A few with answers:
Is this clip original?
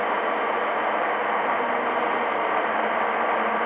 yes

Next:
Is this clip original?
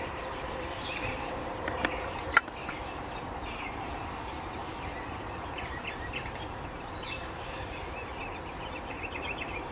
no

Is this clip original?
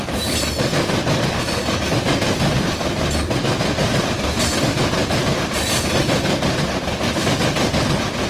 no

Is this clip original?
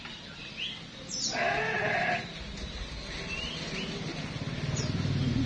yes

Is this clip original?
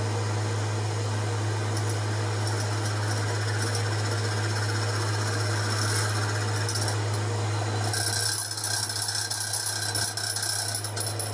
yes